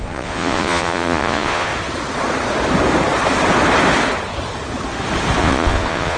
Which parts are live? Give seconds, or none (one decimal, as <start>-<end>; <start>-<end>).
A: 1.7-5.4

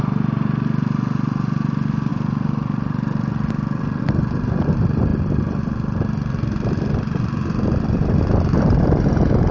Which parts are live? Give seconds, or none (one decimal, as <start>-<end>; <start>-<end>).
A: 0.0-9.5